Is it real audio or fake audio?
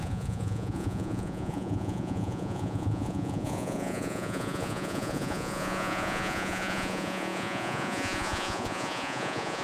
fake